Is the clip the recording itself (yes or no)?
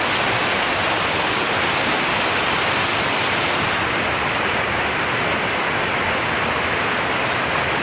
yes